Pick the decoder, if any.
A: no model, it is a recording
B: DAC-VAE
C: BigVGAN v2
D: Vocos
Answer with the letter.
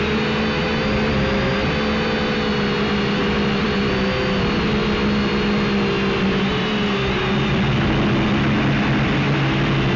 A